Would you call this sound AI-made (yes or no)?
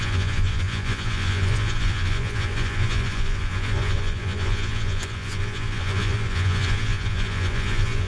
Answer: yes